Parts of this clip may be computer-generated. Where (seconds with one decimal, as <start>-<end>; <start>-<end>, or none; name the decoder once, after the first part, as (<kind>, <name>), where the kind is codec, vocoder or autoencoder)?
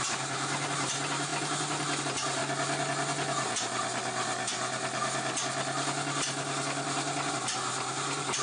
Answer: 0.0-1.3 (vocoder, BigVGAN v2); 2.0-2.4; 7.3-8.4